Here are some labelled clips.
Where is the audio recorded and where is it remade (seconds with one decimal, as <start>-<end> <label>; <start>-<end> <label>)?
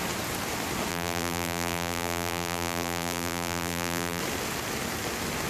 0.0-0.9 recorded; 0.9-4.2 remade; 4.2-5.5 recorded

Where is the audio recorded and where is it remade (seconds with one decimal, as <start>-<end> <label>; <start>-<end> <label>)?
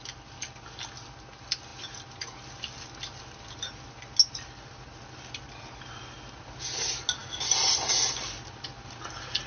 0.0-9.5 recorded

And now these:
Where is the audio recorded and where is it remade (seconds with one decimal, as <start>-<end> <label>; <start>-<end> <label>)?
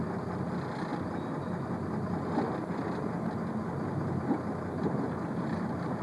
0.0-6.0 recorded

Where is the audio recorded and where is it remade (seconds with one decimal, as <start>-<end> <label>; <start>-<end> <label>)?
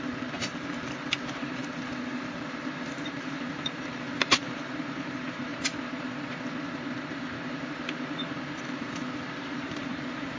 0.0-5.5 remade; 5.5-7.0 recorded; 7.0-10.4 remade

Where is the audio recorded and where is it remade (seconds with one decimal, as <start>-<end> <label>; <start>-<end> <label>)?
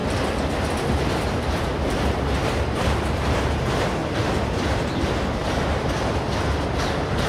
0.0-1.1 recorded; 1.1-4.0 remade; 4.0-4.7 recorded; 4.7-5.4 remade; 5.4-6.7 recorded; 6.7-7.3 remade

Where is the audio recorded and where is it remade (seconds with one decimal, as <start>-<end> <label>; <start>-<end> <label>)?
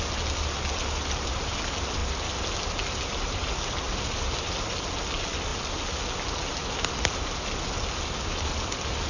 0.0-9.1 recorded